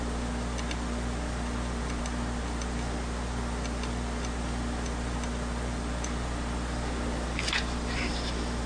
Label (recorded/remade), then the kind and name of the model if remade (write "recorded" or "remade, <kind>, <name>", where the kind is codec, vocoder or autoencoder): recorded